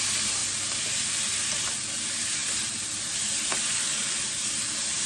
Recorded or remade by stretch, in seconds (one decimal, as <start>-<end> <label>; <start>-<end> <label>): 0.0-5.1 recorded